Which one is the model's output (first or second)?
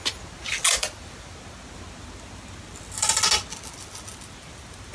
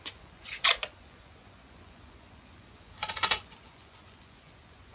second